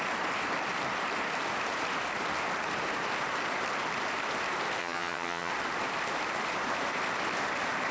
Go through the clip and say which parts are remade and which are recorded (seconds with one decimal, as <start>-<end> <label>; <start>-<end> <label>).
0.0-4.8 recorded; 4.8-5.5 remade; 5.5-7.9 recorded